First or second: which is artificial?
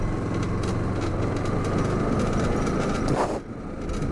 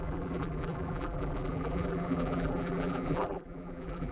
second